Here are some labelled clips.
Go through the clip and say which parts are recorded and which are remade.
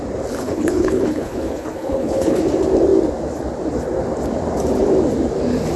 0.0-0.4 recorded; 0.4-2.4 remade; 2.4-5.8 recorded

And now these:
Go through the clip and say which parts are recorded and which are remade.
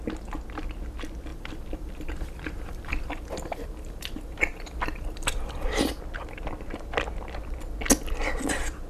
0.0-1.3 recorded; 1.3-6.0 remade; 6.0-8.9 recorded